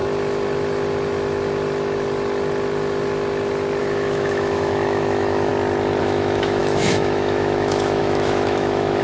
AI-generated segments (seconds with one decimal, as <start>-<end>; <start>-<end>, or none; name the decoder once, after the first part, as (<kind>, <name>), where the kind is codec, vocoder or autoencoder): 3.8-5.5 (autoencoder, DAC-VAE); 6.0-9.0